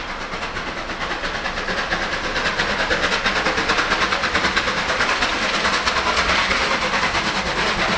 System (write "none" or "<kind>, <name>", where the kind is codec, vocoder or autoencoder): none